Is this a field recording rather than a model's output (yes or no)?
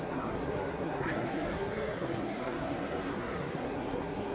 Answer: no